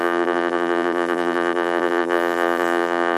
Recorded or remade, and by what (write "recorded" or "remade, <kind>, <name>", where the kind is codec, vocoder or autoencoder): remade, vocoder, BigVGAN v2